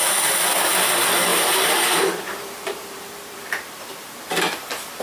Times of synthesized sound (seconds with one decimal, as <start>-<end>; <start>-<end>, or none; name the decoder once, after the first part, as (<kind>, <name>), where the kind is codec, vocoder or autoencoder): 1.3-4.1 (vocoder, BigVGAN v2)